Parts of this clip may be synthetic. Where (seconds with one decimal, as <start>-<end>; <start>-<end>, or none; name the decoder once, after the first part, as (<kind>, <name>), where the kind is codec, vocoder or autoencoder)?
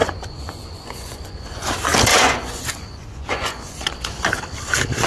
0.0-1.7 (vocoder, Vocos); 2.1-4.3